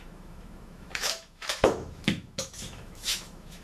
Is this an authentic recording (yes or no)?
no